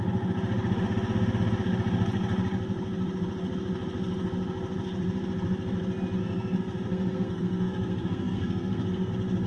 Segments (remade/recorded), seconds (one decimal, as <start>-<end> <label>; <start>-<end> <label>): 0.0-6.2 recorded; 6.2-9.1 remade; 9.1-9.5 recorded